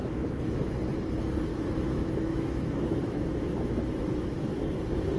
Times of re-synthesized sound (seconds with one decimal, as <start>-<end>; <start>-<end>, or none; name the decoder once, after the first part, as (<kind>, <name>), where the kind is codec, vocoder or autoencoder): 0.0-0.8 (autoencoder, DAC-VAE); 1.5-4.6